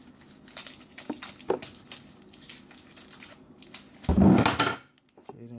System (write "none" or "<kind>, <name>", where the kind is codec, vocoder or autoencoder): none